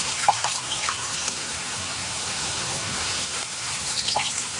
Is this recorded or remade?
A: remade